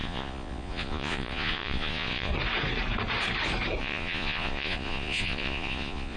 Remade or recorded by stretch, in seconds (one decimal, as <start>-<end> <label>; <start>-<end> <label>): 0.0-2.3 remade; 2.3-3.8 recorded; 3.8-6.2 remade